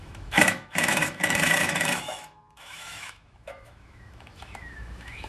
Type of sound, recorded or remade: remade